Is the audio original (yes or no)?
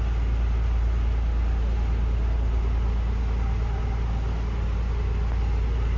yes